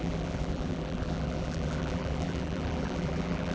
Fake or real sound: fake